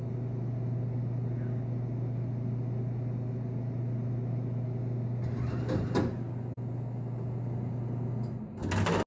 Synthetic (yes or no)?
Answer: no